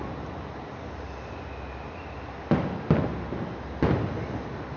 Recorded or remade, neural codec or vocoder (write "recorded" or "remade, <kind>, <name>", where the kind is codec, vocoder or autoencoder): recorded